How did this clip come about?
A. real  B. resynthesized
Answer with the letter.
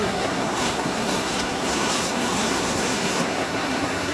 B